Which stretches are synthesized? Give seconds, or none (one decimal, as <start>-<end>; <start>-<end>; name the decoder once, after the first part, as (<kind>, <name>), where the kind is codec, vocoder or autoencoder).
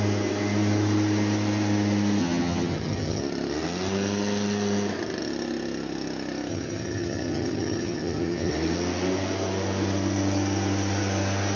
2.2-3.2 (vocoder, HiFi-GAN); 6.5-8.5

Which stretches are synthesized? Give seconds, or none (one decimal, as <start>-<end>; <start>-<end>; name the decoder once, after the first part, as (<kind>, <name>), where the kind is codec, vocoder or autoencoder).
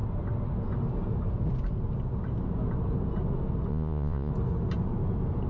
3.7-4.3 (vocoder, Vocos)